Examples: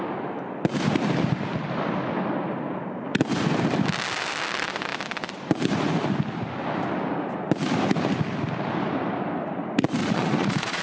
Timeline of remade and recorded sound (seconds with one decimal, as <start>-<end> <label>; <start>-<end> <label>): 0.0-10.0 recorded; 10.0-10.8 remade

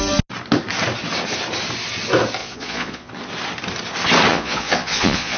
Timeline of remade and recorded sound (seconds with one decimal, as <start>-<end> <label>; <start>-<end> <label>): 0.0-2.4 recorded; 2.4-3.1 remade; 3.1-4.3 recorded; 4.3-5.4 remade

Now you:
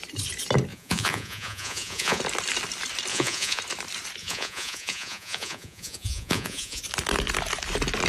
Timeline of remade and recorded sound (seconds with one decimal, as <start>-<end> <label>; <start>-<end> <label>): 0.0-0.7 recorded; 0.7-2.2 remade; 2.2-3.1 recorded; 3.1-3.6 remade; 3.6-4.2 recorded; 4.2-6.8 remade; 6.8-8.1 recorded

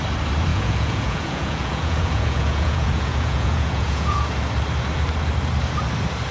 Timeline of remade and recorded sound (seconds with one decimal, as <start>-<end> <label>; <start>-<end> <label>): 0.0-0.5 recorded; 0.5-4.3 remade; 4.3-6.3 recorded

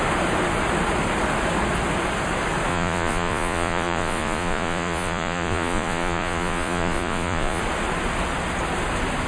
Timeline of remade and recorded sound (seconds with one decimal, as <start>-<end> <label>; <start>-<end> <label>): 0.0-2.7 recorded; 2.7-7.6 remade; 7.6-9.3 recorded

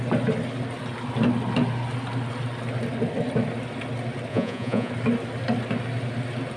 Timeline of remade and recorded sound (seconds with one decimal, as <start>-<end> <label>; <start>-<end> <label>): 0.0-4.3 recorded; 4.3-4.9 remade; 4.9-6.6 recorded